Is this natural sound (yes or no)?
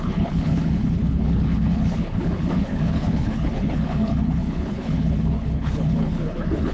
no